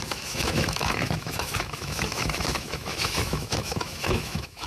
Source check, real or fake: fake